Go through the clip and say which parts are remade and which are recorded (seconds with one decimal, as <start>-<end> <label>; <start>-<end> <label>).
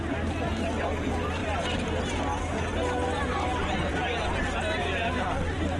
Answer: 0.0-5.8 recorded